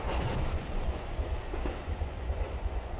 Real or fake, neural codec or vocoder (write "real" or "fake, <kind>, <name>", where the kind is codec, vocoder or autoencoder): fake, vocoder, Vocos